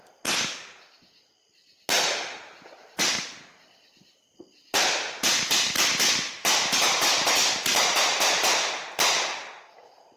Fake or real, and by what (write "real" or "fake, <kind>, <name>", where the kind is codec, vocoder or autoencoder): real